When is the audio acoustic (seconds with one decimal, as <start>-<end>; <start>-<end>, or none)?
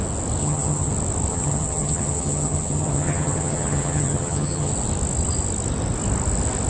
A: 0.0-0.4; 0.9-1.3; 4.7-6.7